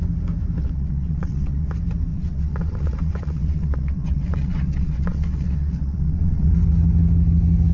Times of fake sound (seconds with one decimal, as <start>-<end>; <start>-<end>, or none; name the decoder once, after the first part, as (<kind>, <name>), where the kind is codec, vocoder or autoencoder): 0.6-1.7 (vocoder, WaveNeXt); 2.1-6.5